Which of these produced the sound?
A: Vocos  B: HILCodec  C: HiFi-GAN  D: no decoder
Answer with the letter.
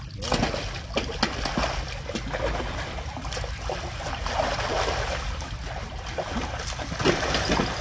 D